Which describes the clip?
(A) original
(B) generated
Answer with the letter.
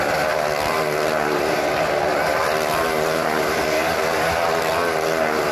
A